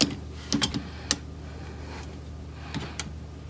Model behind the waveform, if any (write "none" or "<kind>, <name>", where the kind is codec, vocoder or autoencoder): none